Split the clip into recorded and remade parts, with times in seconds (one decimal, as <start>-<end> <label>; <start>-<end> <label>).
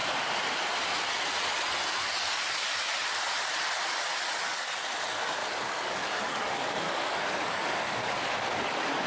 0.0-5.0 recorded; 5.0-9.1 remade